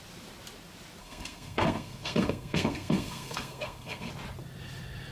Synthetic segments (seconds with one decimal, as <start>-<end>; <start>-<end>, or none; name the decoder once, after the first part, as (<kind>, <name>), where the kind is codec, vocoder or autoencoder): 1.0-4.1 (codec, SNAC)